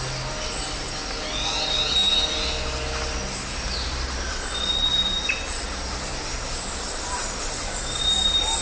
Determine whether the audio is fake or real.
real